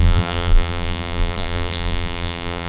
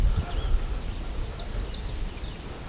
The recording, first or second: second